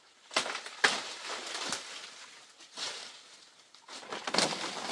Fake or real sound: real